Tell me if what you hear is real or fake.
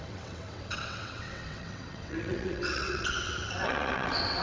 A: fake